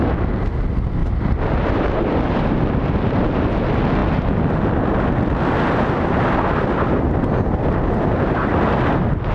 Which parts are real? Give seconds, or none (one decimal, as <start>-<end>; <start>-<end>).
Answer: 0.0-1.0; 3.3-9.3